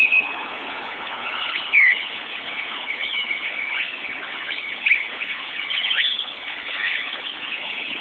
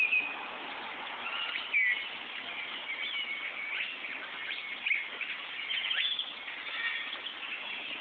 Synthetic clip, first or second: first